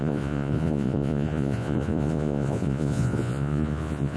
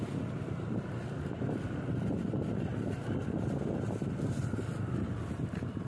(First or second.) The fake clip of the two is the first